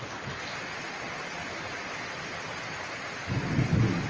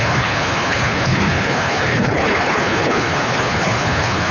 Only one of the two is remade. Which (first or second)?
second